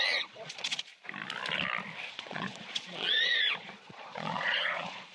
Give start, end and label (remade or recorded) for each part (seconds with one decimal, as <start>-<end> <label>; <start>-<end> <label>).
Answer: 0.0-0.9 remade; 0.9-2.1 recorded; 2.1-5.1 remade